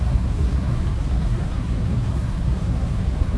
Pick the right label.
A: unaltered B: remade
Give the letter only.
B